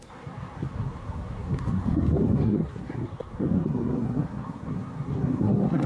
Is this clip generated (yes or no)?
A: yes